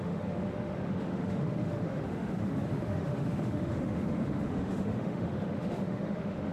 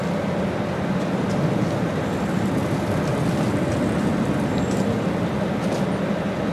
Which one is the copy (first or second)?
first